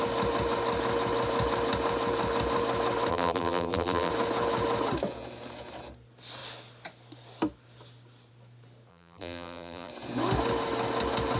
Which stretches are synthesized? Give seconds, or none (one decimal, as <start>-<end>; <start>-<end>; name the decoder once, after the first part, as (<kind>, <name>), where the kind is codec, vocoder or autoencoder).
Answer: 3.1-4.1 (vocoder, BigVGAN v2); 8.9-9.9